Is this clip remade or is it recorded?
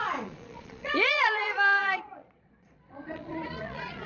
remade